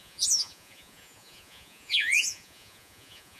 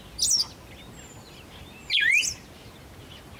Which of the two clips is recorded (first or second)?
second